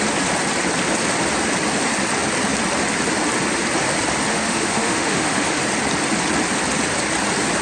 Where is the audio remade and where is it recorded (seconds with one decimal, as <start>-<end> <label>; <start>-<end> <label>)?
0.0-4.3 recorded; 4.3-5.6 remade; 5.6-7.6 recorded